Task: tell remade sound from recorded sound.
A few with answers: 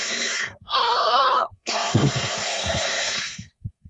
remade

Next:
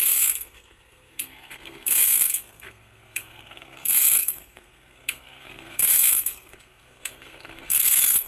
remade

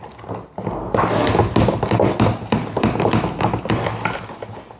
recorded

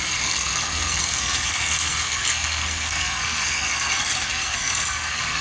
remade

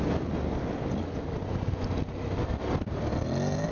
recorded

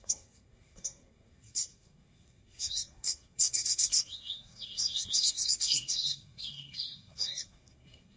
remade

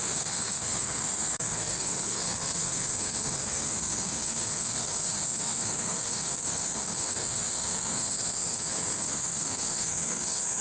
remade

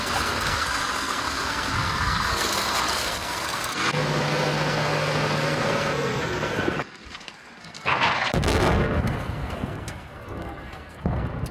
remade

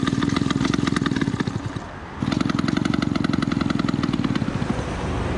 recorded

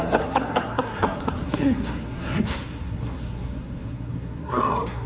remade